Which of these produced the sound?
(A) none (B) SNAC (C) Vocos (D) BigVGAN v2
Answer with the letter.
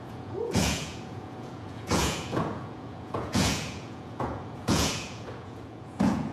C